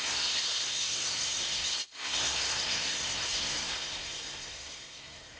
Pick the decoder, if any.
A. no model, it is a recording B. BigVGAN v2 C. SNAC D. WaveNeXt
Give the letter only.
C